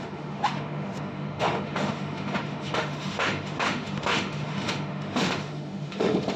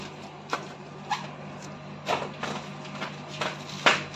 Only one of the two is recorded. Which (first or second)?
second